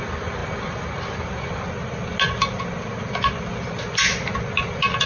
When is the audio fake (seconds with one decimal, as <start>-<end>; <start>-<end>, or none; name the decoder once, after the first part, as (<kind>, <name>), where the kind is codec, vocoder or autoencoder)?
none